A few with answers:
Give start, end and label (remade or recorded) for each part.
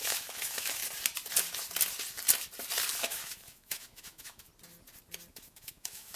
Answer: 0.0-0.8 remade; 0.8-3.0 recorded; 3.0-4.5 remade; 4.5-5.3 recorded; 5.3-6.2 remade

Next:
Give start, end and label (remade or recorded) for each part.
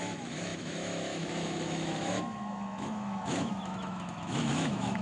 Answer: 0.0-5.0 remade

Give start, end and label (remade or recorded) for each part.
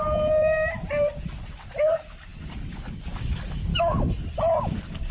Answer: 0.0-3.7 recorded; 3.7-4.2 remade; 4.2-5.1 recorded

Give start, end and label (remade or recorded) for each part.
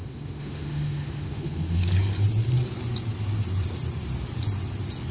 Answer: 0.0-1.8 remade; 1.8-5.1 recorded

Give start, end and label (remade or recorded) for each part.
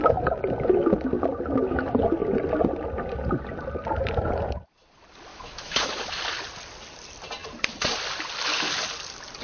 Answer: 0.0-5.3 recorded; 5.3-6.2 remade; 6.2-9.4 recorded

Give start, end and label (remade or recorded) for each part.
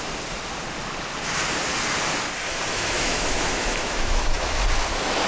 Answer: 0.0-2.7 recorded; 2.7-4.6 remade; 4.6-5.3 recorded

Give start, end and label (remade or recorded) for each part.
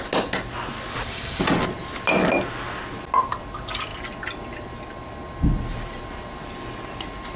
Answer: 0.0-7.4 recorded